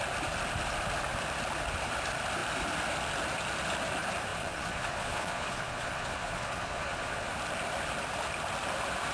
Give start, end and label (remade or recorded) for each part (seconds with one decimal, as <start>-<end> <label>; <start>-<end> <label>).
0.0-4.3 recorded; 4.3-7.3 remade; 7.3-9.1 recorded